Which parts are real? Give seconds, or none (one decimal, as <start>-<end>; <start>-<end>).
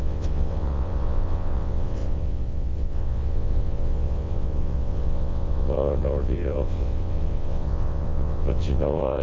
none